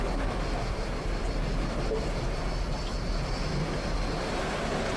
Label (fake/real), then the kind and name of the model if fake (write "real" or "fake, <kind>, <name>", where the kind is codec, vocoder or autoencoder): real